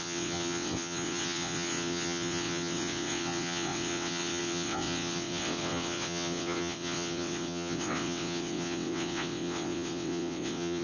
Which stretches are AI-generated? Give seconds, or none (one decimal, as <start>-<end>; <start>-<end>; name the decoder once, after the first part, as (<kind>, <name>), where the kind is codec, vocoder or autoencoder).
0.0-10.8 (vocoder, WaveNeXt)